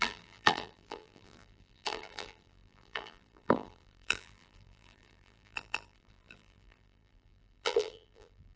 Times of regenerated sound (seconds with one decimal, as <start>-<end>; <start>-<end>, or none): 0.0-8.6